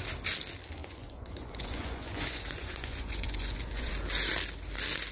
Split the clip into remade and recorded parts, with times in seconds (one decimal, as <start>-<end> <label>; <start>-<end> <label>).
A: 0.0-0.8 recorded; 0.8-3.9 remade; 3.9-5.1 recorded